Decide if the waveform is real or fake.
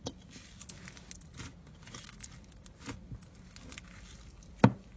real